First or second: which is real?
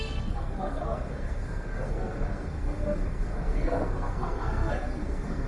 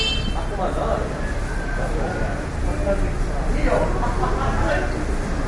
second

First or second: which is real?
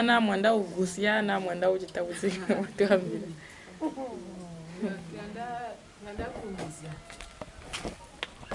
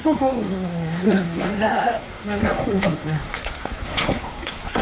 first